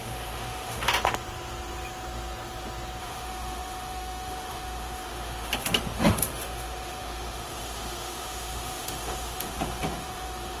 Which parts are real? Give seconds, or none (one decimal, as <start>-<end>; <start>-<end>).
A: 0.9-3.0